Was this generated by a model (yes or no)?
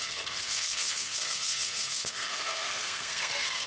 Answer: yes